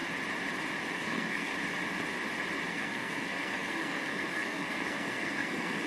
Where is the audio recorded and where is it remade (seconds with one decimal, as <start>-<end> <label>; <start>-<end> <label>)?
0.0-0.9 recorded; 0.9-1.5 remade; 1.5-2.7 recorded; 2.7-5.9 remade